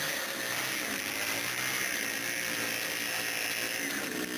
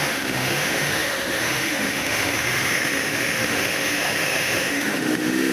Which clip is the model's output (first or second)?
second